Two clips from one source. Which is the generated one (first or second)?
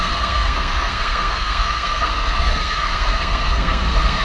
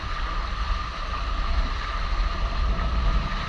first